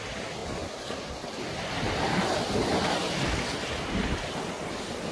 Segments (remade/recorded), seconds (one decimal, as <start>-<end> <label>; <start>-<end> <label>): 0.0-5.1 recorded